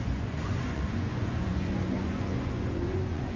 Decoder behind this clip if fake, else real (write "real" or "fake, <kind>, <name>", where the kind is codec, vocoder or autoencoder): fake, vocoder, Vocos